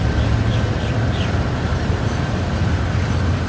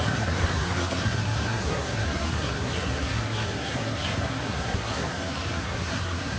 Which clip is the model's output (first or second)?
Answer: second